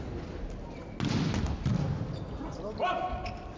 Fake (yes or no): no